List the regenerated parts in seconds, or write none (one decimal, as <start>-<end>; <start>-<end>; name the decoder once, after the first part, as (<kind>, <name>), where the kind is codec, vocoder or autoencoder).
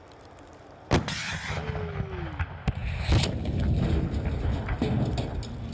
none